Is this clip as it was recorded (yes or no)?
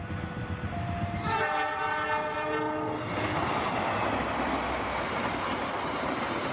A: yes